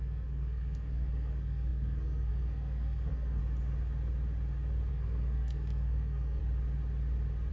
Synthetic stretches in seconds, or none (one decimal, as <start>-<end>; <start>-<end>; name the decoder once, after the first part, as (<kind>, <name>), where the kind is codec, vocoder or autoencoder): 0.0-3.4 (codec, SNAC); 4.9-6.4